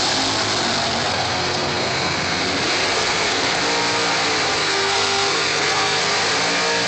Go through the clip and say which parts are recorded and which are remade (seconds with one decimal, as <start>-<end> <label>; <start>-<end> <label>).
0.0-1.1 recorded; 1.1-2.4 remade; 2.4-2.8 recorded; 2.8-3.6 remade; 3.6-4.6 recorded; 4.6-6.1 remade; 6.1-6.9 recorded